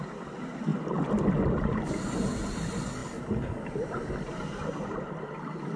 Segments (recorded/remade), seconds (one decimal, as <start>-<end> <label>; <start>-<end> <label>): 0.0-5.8 recorded

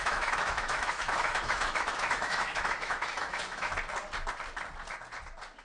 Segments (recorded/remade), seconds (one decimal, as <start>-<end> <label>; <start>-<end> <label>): 0.0-3.7 remade; 3.7-5.6 recorded